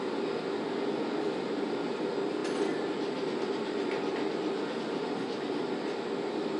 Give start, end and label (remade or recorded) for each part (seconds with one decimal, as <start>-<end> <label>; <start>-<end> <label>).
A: 0.0-6.6 recorded